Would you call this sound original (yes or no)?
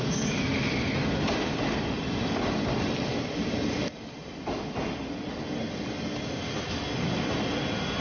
yes